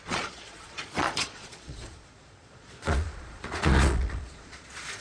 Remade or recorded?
remade